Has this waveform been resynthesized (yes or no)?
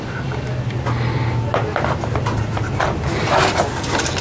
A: no